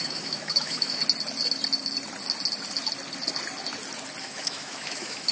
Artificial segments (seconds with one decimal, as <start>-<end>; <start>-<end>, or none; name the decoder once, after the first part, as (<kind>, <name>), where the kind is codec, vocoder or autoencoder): 0.0-1.0 (autoencoder, DAC-VAE); 4.2-5.3